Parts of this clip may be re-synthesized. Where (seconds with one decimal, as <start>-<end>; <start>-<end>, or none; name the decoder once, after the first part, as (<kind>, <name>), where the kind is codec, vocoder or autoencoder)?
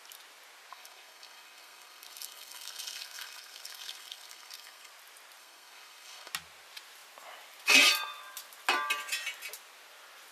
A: 0.7-4.9 (codec, SNAC); 5.4-6.3